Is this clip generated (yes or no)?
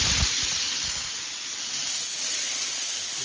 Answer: no